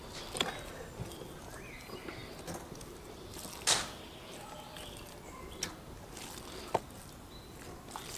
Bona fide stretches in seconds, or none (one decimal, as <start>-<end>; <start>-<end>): 0.0-8.2